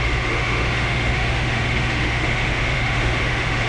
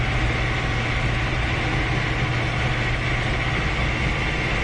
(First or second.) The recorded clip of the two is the second